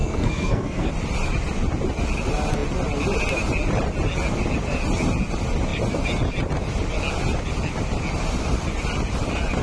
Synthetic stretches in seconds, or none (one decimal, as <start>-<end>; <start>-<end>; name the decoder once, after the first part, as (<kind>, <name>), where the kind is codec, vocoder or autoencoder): 0.0-0.9 (codec, SNAC)